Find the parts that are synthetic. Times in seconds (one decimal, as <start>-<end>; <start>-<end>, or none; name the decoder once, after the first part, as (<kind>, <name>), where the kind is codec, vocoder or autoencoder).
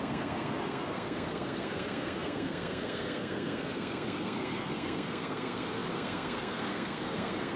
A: 0.0-7.6 (codec, SNAC)